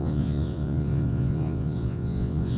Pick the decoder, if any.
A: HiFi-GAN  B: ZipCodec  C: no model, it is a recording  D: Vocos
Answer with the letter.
D